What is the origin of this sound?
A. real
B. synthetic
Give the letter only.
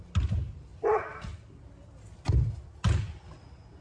A